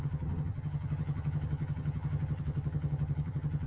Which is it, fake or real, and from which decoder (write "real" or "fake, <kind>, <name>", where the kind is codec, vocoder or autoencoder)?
fake, vocoder, HiFi-GAN